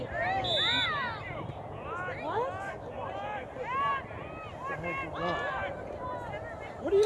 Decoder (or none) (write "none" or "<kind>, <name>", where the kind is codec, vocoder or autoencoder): none